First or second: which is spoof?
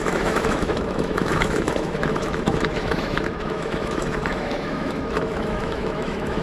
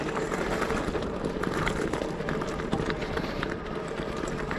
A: first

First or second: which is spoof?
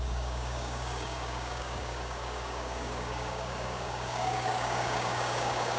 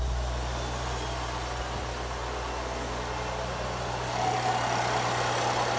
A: first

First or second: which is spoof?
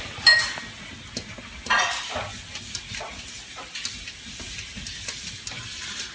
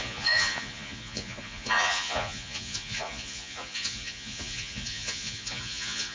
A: second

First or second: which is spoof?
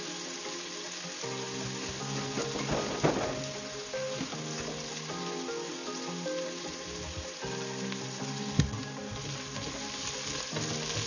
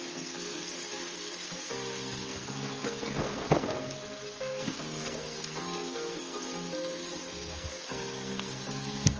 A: second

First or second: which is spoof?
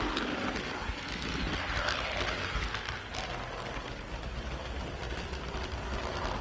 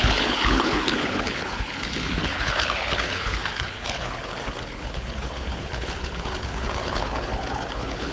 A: second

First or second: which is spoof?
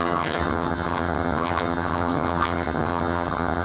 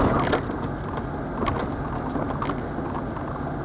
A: first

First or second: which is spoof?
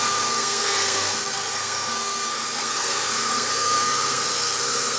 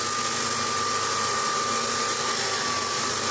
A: first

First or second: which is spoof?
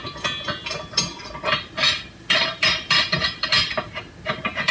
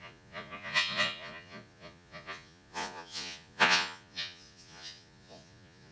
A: second